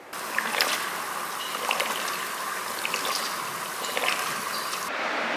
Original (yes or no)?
yes